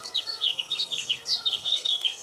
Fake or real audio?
fake